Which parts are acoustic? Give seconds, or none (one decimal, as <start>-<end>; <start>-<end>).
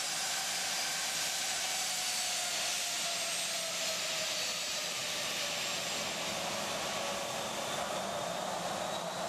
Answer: 0.0-9.3